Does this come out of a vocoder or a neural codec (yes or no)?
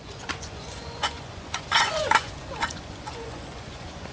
yes